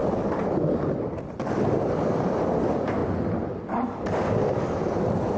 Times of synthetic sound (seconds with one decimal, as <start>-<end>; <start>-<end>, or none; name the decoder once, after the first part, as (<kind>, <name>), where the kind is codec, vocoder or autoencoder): none